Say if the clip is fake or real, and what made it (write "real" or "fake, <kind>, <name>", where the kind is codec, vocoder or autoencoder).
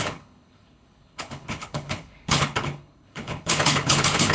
fake, codec, HILCodec